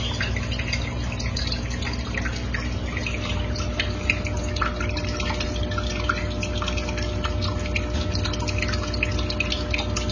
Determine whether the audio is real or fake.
real